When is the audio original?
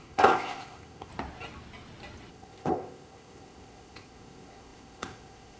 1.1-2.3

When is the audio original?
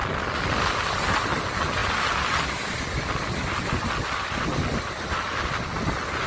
0.0-6.3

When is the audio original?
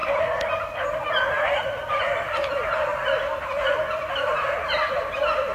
0.0-1.1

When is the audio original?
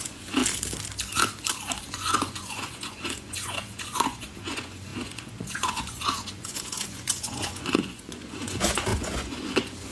0.4-1.8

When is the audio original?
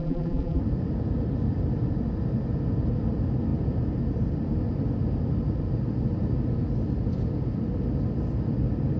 0.6-9.0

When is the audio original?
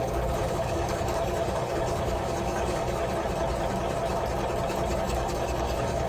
3.0-5.0